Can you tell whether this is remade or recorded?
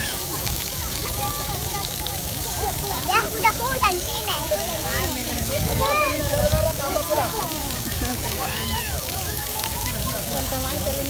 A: remade